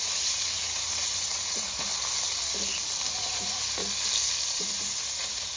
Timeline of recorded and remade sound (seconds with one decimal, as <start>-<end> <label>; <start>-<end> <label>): 0.0-1.9 remade; 1.9-3.1 recorded; 3.1-3.8 remade; 3.8-4.5 recorded; 4.5-5.6 remade